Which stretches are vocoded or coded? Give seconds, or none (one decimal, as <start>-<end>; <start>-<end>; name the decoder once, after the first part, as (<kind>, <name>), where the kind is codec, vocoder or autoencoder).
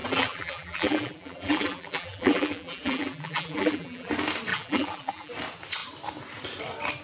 0.0-4.1 (vocoder, BigVGAN v2); 4.5-5.3